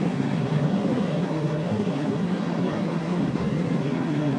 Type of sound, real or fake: fake